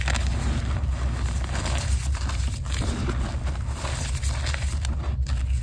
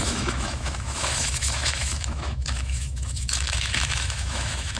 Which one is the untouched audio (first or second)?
first